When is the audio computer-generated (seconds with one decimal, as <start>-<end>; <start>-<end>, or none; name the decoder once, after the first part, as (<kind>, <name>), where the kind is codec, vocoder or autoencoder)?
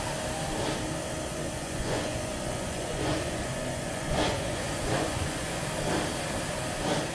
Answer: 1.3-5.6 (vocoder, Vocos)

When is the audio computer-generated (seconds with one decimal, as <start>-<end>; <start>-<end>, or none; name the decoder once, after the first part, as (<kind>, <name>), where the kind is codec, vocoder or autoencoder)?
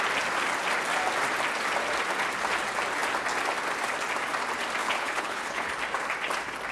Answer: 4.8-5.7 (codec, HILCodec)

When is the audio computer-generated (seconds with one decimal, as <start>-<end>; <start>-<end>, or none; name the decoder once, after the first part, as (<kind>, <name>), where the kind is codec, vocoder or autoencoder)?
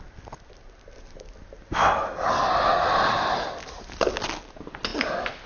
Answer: 2.7-3.6 (vocoder, BigVGAN v2)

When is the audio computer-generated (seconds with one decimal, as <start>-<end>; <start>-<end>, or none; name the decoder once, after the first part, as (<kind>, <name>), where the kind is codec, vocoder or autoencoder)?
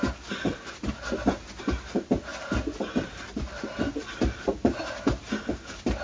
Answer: none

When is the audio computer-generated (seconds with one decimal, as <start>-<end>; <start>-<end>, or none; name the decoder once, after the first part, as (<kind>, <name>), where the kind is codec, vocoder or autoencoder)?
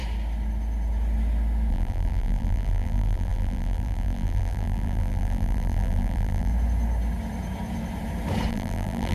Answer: 1.7-6.5 (vocoder, BigVGAN v2); 8.5-9.1